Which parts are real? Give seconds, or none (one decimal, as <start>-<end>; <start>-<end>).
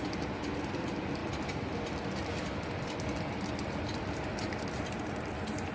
none